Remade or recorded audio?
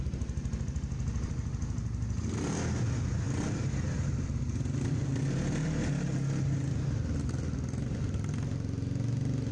recorded